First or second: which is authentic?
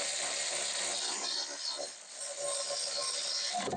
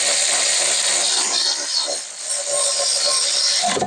first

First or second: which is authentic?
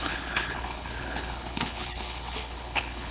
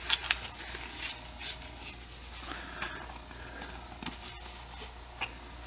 second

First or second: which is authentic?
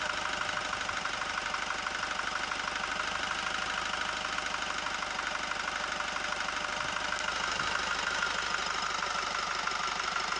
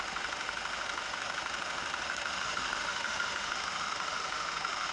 first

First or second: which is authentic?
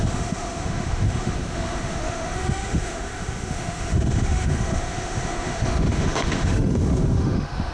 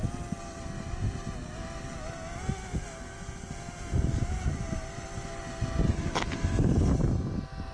second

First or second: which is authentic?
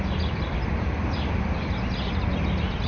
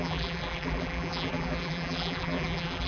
first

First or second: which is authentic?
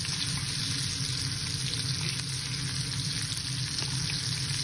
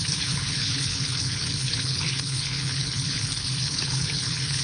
first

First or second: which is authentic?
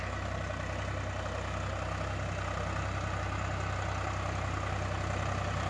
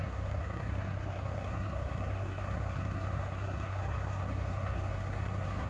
first